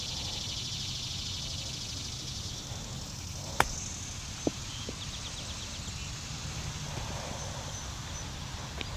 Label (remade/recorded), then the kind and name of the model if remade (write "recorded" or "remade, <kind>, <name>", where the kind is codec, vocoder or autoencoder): recorded